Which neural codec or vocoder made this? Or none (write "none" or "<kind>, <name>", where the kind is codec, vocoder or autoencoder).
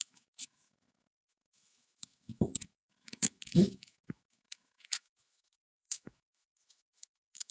autoencoder, DAC-VAE